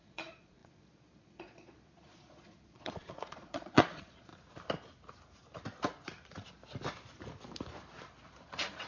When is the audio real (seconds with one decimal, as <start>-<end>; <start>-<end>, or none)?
4.3-8.9